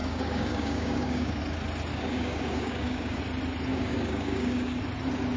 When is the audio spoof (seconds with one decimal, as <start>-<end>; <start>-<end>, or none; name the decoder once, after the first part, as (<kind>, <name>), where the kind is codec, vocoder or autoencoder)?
0.0-1.4 (codec, DAC); 1.9-3.2; 3.7-4.8